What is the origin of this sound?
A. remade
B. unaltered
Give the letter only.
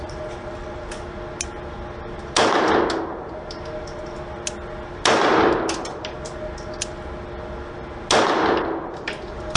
B